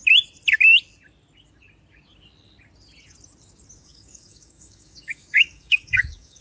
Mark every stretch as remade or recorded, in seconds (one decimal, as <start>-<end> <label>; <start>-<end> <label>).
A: 0.0-3.8 recorded; 3.8-6.4 remade